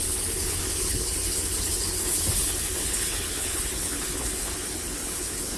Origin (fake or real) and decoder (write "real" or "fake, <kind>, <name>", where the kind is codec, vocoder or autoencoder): fake, codec, HILCodec